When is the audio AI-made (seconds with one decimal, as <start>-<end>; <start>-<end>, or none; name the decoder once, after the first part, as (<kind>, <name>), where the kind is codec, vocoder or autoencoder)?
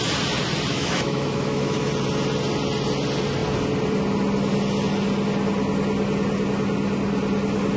0.7-1.9 (autoencoder, DAC-VAE)